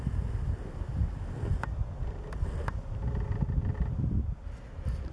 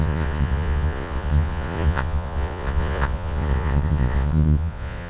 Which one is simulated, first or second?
second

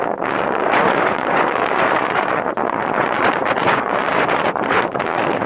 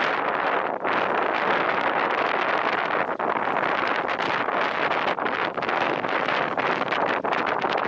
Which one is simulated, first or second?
first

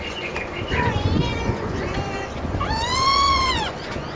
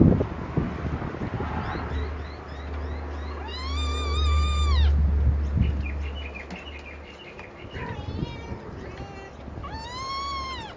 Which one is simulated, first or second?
first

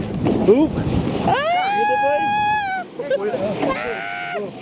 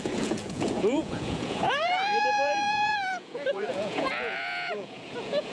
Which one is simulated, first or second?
second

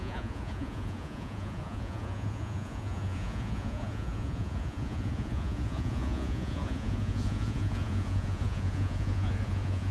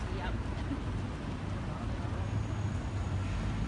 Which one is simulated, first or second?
first